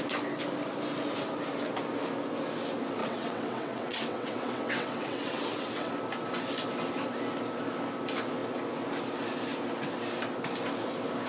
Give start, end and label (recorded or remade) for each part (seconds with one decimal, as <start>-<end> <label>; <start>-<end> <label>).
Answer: 0.0-3.0 recorded; 3.0-5.9 remade; 5.9-11.3 recorded